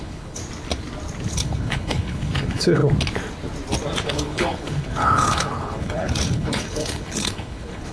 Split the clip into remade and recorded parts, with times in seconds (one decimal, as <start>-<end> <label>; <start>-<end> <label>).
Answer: 0.0-0.4 remade; 0.4-1.3 recorded; 1.3-2.8 remade; 2.8-4.0 recorded; 4.0-7.9 remade